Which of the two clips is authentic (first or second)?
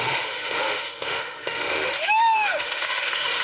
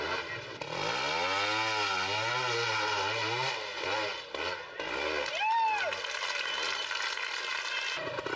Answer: second